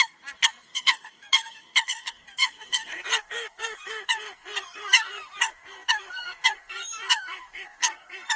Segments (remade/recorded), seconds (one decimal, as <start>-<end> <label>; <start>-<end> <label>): 0.0-8.4 remade